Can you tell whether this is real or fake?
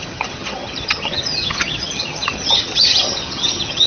fake